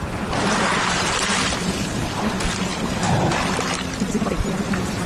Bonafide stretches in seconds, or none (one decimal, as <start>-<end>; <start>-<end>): 0.0-5.1